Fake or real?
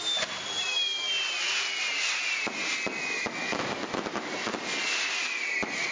real